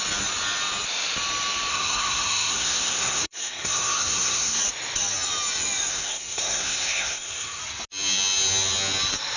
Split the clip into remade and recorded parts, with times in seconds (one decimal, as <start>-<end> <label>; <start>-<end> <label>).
0.0-1.7 recorded; 1.7-4.6 remade; 4.6-5.9 recorded; 5.9-7.6 remade; 7.6-9.4 recorded